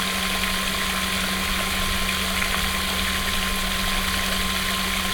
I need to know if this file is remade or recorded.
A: recorded